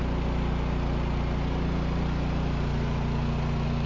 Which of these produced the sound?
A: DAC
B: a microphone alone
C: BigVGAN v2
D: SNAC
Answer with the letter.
B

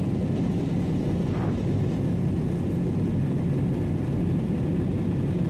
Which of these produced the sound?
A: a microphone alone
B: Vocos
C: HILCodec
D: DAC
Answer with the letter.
A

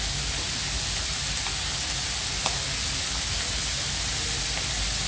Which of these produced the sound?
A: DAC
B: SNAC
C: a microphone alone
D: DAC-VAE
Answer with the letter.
C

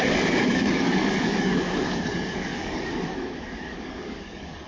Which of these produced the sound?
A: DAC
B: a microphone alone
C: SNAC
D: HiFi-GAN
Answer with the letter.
A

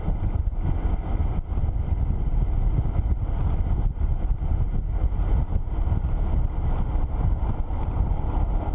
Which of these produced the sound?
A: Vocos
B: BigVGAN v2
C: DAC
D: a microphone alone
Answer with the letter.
D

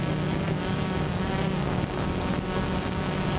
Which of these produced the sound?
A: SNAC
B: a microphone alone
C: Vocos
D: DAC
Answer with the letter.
D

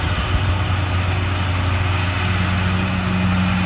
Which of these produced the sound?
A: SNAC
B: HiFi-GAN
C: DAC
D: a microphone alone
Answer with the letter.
D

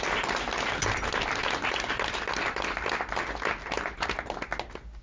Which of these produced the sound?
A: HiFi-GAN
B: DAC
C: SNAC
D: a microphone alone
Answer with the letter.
D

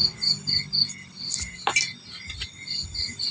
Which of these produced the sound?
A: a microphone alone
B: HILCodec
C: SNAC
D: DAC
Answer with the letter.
A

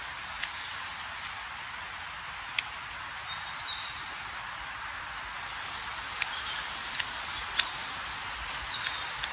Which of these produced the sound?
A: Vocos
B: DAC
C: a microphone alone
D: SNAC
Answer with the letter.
C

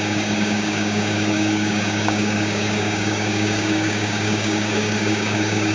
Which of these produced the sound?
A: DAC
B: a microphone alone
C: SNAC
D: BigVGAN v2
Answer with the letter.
A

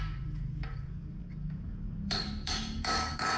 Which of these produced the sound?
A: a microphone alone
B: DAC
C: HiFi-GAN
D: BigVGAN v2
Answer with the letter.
B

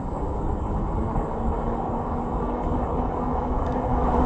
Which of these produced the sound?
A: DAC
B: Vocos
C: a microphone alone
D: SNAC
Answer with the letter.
A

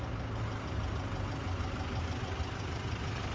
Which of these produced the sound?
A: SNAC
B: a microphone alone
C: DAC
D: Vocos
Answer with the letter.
B